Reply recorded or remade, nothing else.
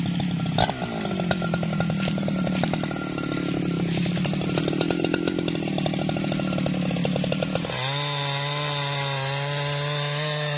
recorded